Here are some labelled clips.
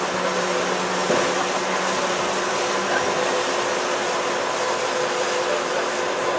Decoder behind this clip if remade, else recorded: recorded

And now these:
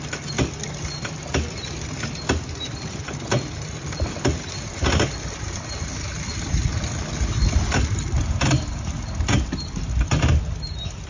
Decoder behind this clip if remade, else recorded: recorded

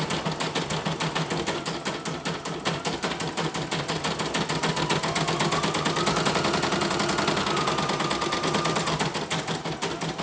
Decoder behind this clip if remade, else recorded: recorded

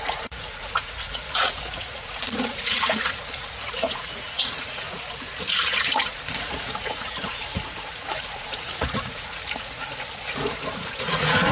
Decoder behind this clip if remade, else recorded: remade, vocoder, Vocos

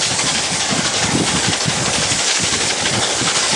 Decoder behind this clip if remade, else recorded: remade, codec, DAC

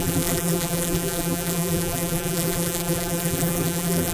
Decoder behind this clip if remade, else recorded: remade, vocoder, BigVGAN v2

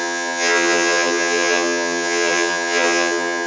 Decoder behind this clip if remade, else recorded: remade, vocoder, HiFi-GAN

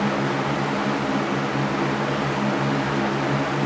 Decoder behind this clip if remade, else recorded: recorded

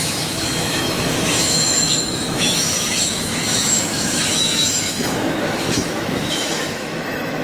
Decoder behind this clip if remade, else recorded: remade, autoencoder, DAC-VAE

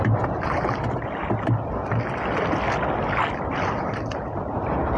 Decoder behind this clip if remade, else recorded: recorded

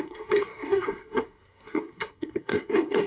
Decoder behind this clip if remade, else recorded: remade, codec, SNAC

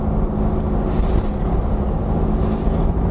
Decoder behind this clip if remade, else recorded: recorded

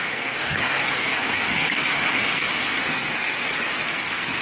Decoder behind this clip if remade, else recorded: remade, codec, SNAC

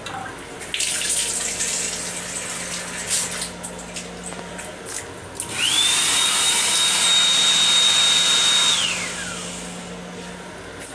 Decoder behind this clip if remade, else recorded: recorded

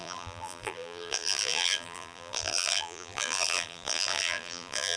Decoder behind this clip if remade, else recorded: remade, vocoder, BigVGAN v2